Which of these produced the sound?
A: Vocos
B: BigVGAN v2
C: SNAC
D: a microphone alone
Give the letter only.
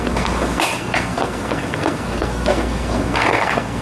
C